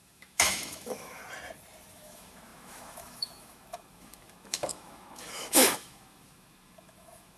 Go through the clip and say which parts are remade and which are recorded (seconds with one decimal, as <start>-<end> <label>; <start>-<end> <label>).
0.0-1.2 remade; 1.2-1.9 recorded; 1.9-7.4 remade

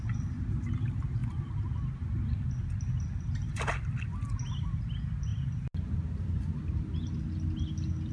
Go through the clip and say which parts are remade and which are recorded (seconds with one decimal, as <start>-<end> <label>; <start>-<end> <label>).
0.0-8.1 recorded

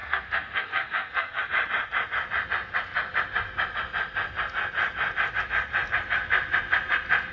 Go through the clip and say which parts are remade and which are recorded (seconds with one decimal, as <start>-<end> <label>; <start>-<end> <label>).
0.0-1.4 remade; 1.4-7.3 recorded

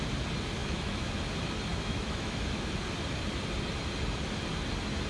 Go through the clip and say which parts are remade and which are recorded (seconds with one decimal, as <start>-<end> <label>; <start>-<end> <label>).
0.0-0.6 recorded; 0.6-1.1 remade; 1.1-1.7 recorded; 1.7-2.7 remade; 2.7-5.1 recorded